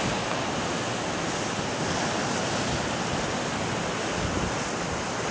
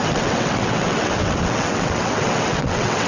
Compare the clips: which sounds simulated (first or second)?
second